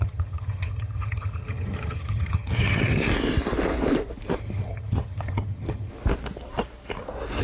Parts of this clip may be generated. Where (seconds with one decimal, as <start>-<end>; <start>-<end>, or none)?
0.0-3.0; 4.4-5.9